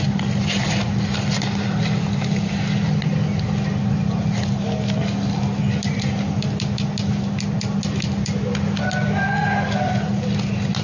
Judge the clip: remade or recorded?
recorded